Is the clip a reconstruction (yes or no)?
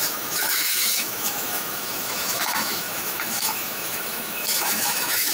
yes